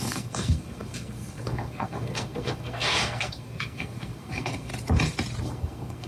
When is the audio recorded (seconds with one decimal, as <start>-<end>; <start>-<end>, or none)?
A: 4.7-5.4